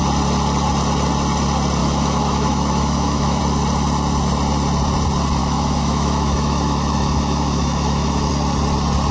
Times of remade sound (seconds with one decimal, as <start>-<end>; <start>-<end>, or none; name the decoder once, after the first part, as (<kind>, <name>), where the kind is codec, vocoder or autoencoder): 1.8-3.4 (autoencoder, DAC-VAE); 5.4-8.3